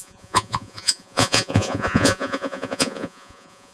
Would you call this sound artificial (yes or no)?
yes